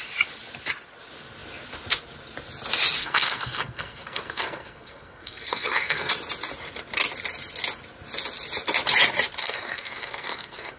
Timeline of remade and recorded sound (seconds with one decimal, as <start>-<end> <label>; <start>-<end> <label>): 0.0-3.0 recorded; 3.0-6.1 remade; 6.1-9.4 recorded; 9.4-10.8 remade